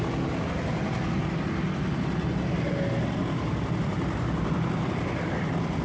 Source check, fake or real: real